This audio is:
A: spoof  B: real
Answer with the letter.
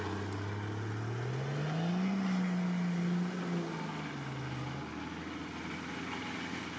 B